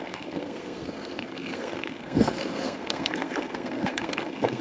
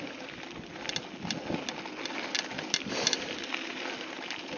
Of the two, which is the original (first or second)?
second